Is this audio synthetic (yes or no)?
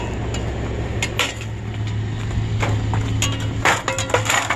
no